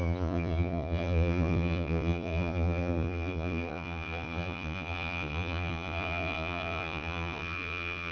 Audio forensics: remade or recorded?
remade